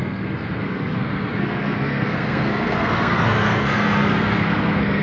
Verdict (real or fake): fake